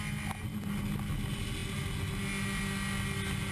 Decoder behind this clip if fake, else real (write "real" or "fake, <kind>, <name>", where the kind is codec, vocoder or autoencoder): real